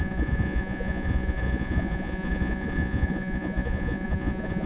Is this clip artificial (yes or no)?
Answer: yes